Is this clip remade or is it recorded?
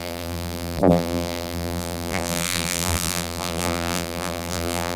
remade